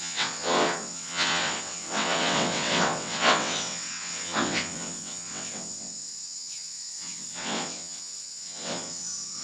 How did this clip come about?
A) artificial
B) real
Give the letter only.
A